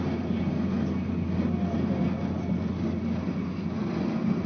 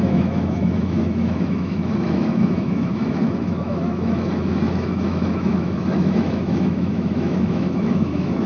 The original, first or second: first